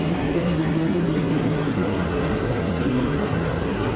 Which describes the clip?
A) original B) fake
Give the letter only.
B